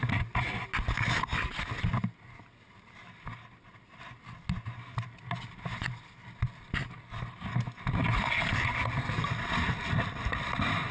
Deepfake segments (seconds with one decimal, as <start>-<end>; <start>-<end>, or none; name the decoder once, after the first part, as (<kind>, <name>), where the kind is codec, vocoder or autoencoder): none